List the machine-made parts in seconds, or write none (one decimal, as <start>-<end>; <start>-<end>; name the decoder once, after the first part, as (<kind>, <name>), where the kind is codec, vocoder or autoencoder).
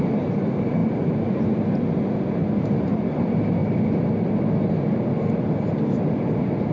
0.8-1.4 (vocoder, BigVGAN v2)